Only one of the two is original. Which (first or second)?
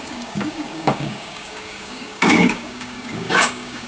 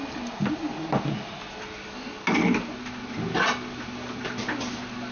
second